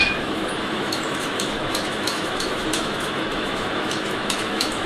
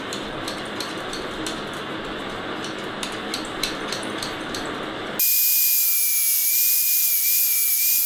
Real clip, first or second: second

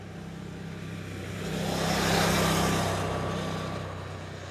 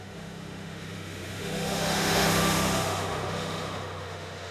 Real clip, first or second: first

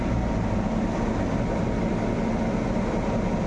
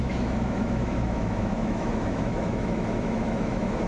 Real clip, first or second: first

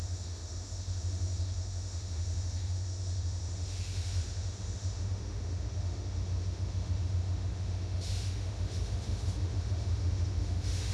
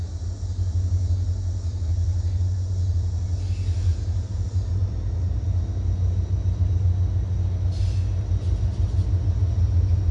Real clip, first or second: second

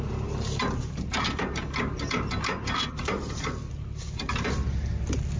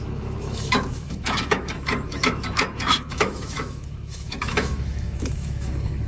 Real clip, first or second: first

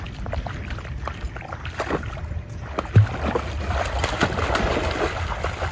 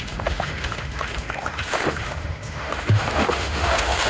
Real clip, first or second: first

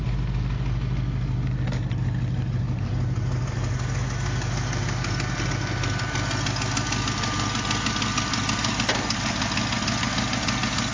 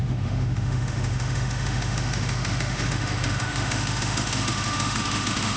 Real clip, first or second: first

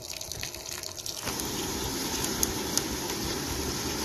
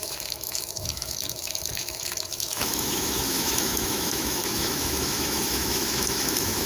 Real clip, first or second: first